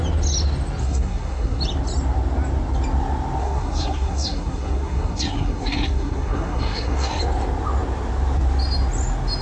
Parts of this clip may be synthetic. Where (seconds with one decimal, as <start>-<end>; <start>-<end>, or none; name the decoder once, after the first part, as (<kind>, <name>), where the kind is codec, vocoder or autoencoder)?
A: 0.8-1.6 (codec, SNAC); 3.4-7.2